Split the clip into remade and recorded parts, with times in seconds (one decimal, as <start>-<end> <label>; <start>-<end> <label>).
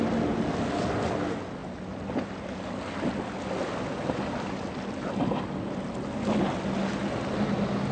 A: 0.0-7.9 recorded